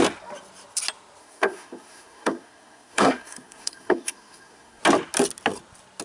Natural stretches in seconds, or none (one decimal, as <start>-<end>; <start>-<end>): 0.0-1.2; 4.8-6.0